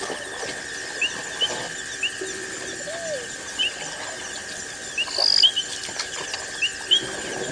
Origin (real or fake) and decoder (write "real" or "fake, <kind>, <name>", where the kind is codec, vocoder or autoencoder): real